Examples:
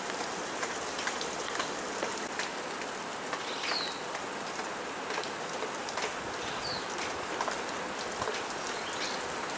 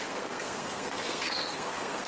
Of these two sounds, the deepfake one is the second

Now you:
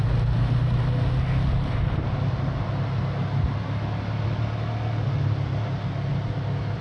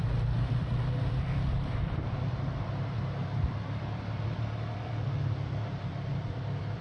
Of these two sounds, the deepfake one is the second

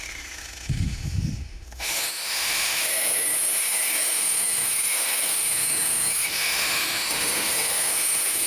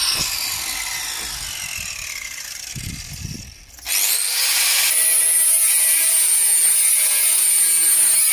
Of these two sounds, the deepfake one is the first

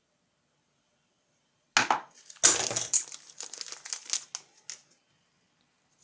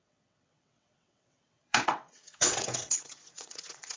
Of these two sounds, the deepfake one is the second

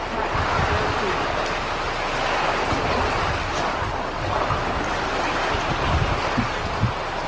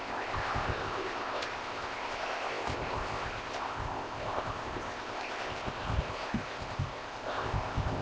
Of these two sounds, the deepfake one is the second